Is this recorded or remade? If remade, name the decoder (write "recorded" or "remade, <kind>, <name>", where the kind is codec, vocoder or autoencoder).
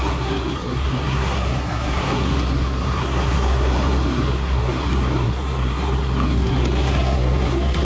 remade, codec, SNAC